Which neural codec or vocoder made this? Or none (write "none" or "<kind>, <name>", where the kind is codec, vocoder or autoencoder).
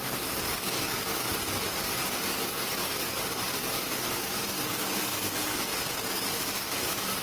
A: codec, DAC